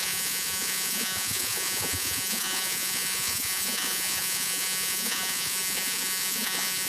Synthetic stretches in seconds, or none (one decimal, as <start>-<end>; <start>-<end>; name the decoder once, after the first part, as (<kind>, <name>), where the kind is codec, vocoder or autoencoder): 0.0-6.9 (vocoder, Vocos)